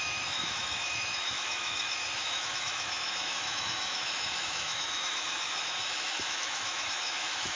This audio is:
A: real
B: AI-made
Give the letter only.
B